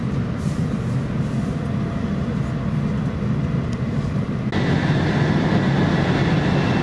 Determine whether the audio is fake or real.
real